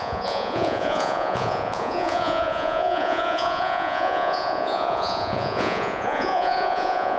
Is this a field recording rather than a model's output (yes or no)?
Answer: no